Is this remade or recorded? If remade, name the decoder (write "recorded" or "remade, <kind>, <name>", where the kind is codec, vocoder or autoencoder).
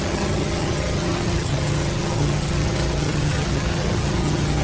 remade, vocoder, HiFi-GAN